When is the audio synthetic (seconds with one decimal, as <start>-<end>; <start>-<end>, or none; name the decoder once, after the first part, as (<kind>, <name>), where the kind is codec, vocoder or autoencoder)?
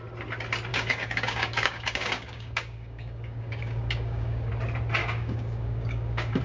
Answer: 0.7-4.5 (codec, DAC); 5.0-6.4